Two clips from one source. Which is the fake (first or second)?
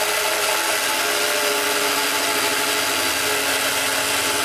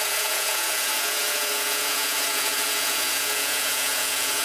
second